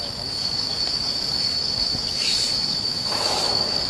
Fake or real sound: fake